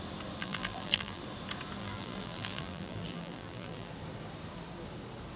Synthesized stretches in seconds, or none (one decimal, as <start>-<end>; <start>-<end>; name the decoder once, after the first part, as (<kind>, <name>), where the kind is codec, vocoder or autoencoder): 0.4-1.2 (vocoder, BigVGAN v2); 1.8-3.9